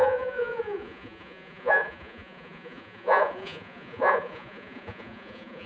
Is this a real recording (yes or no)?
no